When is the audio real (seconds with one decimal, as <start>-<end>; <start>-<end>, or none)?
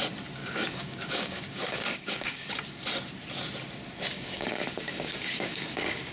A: 0.0-0.4; 2.5-4.1